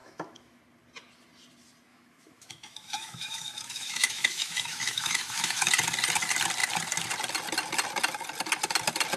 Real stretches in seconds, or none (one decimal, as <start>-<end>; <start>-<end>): 0.6-1.9; 5.7-9.2